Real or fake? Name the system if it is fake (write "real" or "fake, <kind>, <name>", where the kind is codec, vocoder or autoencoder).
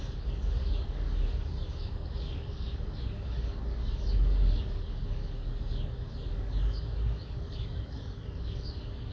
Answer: fake, codec, DAC